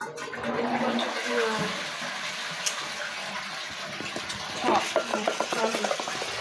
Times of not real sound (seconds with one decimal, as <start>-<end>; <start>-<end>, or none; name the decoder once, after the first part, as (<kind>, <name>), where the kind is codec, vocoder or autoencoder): 5.1-5.9 (vocoder, WaveNeXt)